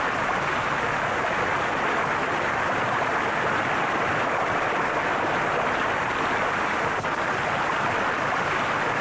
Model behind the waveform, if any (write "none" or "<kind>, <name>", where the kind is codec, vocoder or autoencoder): none